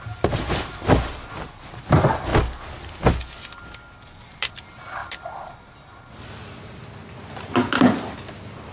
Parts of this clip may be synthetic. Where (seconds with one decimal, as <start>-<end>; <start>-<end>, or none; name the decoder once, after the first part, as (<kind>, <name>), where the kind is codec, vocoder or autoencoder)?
none